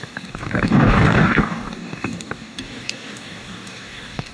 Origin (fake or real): fake